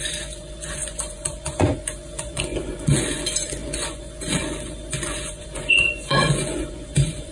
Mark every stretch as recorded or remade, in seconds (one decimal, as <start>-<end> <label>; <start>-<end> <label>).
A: 0.0-7.3 remade